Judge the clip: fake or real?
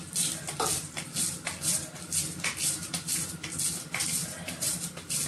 real